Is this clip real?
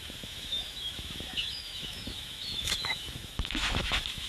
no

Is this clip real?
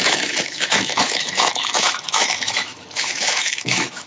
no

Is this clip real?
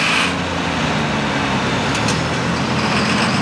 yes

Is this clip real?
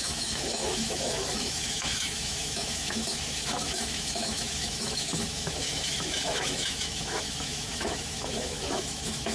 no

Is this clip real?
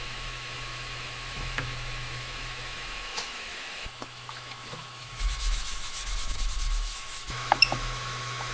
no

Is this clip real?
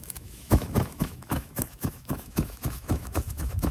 no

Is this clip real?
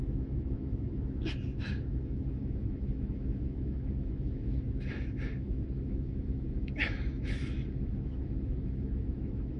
no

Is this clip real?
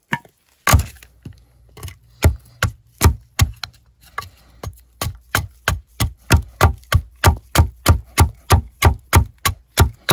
yes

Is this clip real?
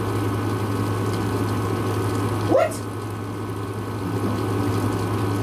yes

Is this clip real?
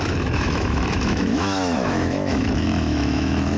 no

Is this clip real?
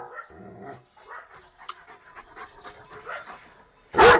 yes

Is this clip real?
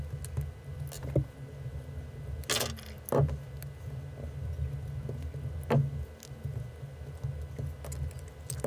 yes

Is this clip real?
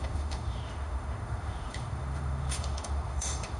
no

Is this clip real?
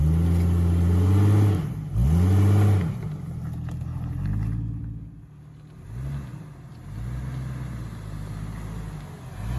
yes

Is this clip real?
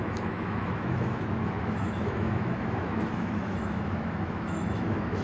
no